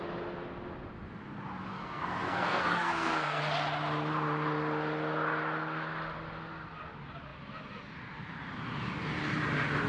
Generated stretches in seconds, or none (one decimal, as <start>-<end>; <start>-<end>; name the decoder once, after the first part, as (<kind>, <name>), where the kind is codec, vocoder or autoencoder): 1.7-3.4 (codec, SNAC)